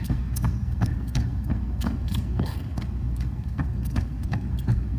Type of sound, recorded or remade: remade